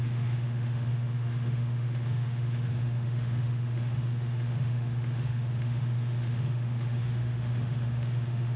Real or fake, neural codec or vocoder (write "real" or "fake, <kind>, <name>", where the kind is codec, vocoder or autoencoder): fake, autoencoder, DAC-VAE